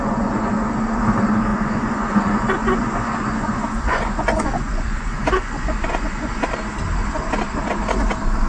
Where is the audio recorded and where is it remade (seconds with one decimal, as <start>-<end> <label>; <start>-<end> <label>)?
0.0-0.5 remade; 0.5-1.5 recorded; 1.5-6.3 remade; 6.3-8.5 recorded